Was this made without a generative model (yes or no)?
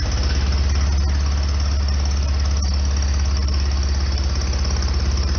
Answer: yes